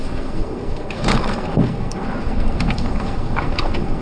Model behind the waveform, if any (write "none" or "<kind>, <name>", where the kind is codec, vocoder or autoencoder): codec, SNAC